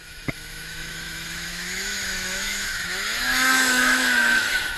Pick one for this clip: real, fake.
fake